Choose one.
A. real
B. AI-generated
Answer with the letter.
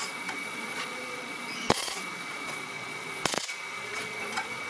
B